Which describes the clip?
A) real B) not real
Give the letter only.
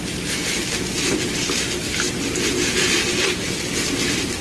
A